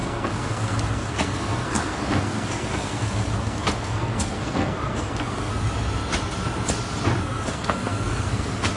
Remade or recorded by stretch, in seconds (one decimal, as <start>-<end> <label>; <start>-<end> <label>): 0.0-5.5 remade; 5.5-7.2 recorded; 7.2-8.8 remade